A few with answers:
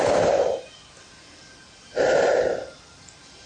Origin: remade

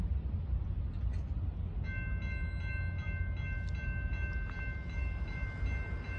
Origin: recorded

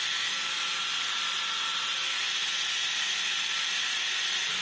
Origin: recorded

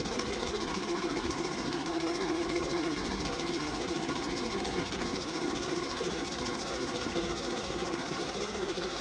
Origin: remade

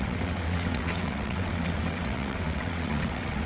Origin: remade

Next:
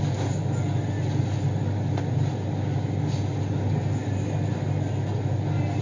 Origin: recorded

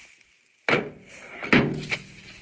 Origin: recorded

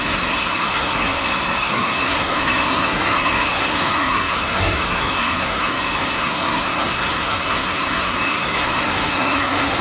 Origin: remade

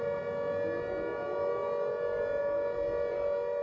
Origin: recorded